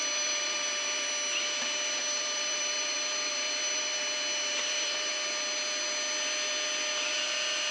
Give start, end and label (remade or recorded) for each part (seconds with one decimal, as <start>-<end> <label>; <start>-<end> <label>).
0.0-1.1 remade; 1.1-2.0 recorded; 2.0-4.0 remade; 4.0-4.5 recorded; 4.5-5.1 remade; 5.1-7.7 recorded